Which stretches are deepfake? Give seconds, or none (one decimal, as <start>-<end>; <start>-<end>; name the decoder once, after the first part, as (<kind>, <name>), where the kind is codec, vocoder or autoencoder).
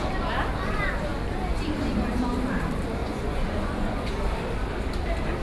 3.0-4.1 (vocoder, Vocos)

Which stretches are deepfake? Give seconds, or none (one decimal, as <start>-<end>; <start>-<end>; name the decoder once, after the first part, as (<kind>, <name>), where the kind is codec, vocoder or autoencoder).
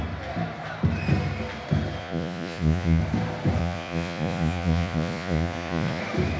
2.0-3.0 (vocoder, Vocos); 3.6-6.0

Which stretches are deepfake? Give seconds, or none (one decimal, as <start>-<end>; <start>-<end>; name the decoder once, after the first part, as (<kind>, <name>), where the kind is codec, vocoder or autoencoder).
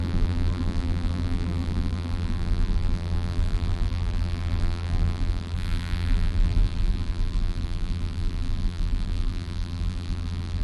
0.0-10.6 (vocoder, BigVGAN v2)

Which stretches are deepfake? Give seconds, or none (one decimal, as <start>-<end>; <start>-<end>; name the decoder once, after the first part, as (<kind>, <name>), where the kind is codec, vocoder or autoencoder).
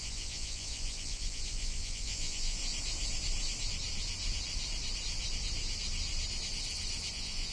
0.0-2.6 (vocoder, Vocos); 7.1-7.5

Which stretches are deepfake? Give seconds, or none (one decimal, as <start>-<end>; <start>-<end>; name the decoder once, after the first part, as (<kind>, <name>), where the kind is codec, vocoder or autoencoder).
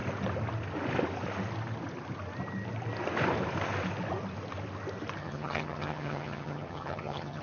5.2-7.4 (vocoder, HiFi-GAN)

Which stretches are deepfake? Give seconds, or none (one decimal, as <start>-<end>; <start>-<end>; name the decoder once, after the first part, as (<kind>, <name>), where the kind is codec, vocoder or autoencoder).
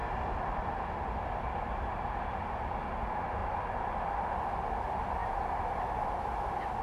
3.4-4.0 (vocoder, BigVGAN v2)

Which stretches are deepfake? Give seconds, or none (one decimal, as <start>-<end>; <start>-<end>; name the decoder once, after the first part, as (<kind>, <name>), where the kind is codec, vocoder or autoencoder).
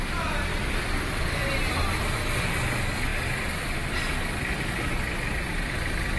none